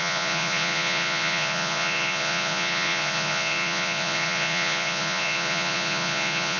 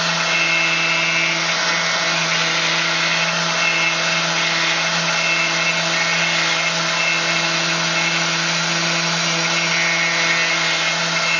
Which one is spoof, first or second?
first